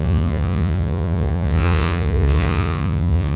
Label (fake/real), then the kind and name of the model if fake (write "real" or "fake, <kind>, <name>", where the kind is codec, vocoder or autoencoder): fake, vocoder, Vocos